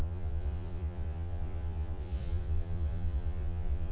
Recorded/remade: remade